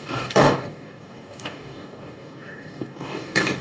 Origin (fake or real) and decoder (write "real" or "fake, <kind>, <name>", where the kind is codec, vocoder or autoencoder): fake, codec, DAC